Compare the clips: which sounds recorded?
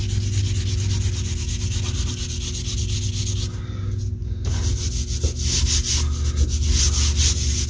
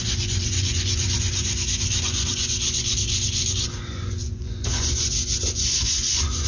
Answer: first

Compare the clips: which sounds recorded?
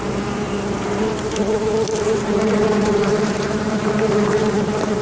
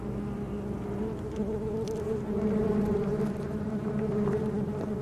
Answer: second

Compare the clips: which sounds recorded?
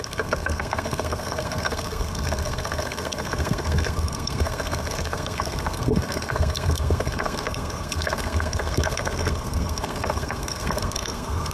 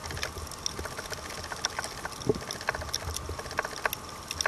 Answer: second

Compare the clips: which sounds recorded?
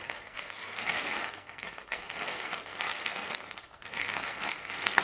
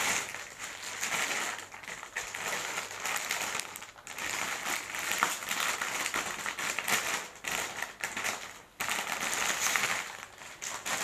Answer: second